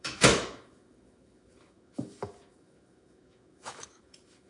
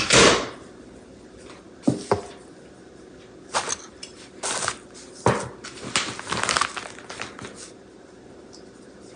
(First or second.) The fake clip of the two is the first